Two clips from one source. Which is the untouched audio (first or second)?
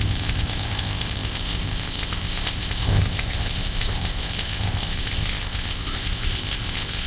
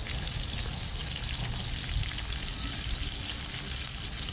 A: second